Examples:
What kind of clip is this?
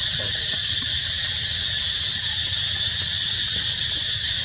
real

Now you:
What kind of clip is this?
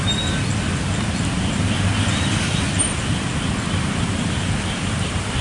real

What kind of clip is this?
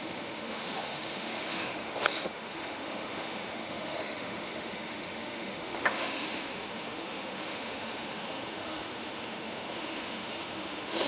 fake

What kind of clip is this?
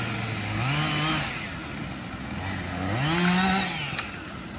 real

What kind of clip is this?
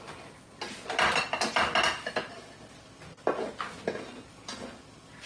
real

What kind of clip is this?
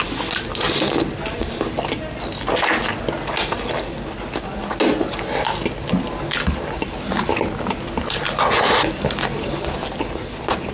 real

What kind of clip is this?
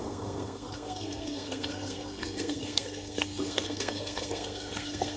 fake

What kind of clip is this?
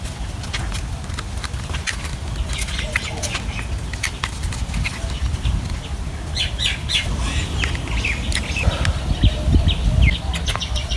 real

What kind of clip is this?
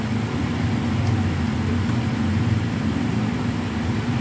real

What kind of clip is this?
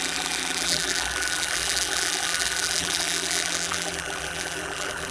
fake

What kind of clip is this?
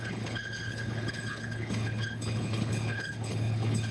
fake